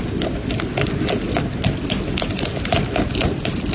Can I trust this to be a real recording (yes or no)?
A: yes